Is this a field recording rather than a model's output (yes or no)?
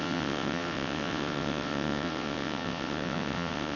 no